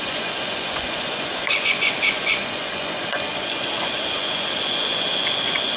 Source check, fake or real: fake